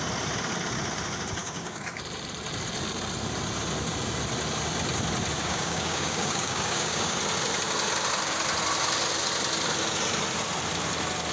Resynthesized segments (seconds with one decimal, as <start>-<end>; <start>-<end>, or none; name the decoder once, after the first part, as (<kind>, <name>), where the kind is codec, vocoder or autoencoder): 1.4-2.0 (codec, DAC); 5.4-7.2